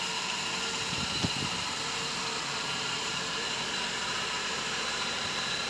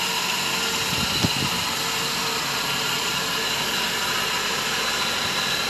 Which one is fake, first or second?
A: first